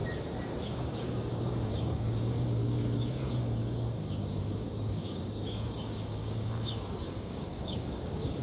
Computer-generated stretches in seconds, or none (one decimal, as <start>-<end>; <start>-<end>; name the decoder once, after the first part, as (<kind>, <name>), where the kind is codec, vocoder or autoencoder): 0.6-8.4 (codec, DAC)